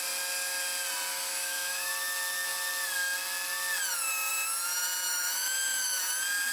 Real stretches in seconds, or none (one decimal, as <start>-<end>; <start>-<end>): 0.0-1.1; 1.9-5.1; 6.0-6.5